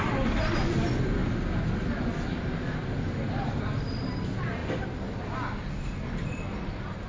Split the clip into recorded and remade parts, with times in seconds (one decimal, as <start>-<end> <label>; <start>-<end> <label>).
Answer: 0.0-7.1 recorded